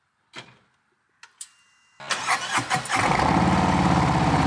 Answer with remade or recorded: recorded